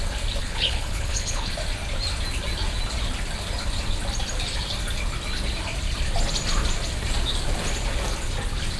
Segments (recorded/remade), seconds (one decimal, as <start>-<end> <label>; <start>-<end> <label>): 0.0-0.4 recorded; 0.4-1.5 remade; 1.5-8.8 recorded